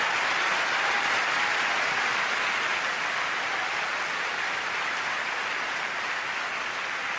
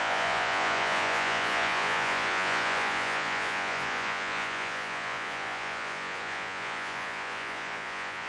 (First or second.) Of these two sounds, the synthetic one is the second